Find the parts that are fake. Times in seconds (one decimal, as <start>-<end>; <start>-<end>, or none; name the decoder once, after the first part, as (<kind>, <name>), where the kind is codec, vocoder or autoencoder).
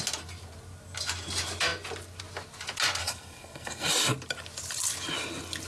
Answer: 3.0-3.9 (codec, SNAC)